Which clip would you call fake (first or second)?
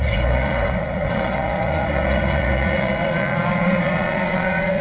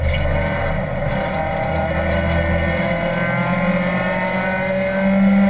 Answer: first